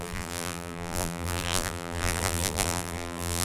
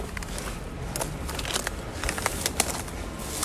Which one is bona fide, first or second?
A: second